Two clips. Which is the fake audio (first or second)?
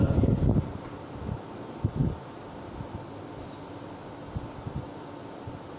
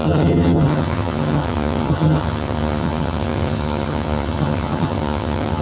second